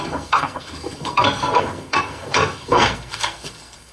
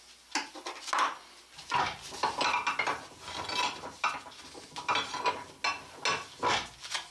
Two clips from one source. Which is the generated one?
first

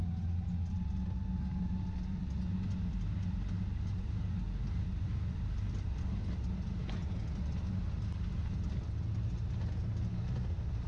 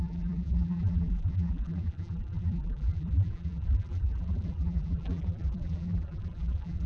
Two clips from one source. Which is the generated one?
second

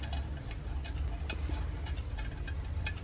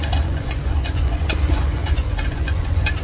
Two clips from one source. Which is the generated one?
second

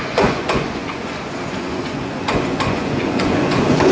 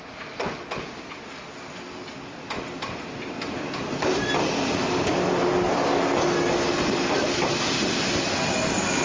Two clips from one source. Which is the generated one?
first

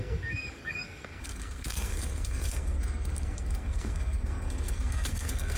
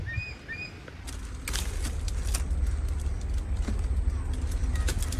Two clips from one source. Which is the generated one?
first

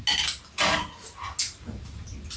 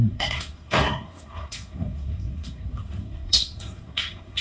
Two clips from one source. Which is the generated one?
second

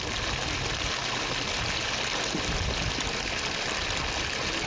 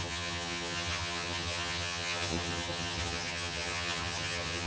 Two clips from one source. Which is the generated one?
second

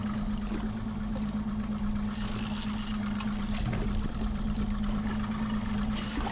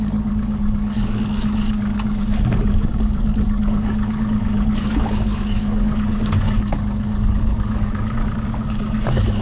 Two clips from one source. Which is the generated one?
second